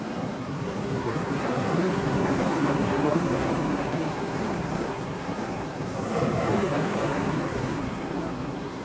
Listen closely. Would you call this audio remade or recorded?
remade